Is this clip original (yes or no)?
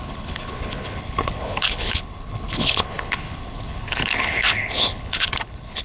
no